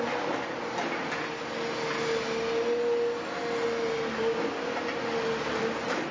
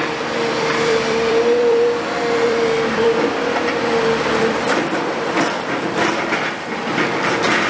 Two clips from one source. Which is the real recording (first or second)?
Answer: first